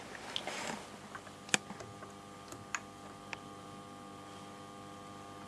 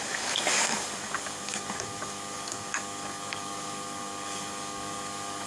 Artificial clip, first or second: second